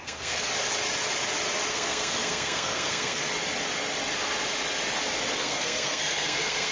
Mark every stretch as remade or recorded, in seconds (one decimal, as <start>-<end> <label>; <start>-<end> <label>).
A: 0.0-0.5 remade; 0.5-1.7 recorded; 1.7-3.2 remade; 3.2-5.4 recorded; 5.4-6.7 remade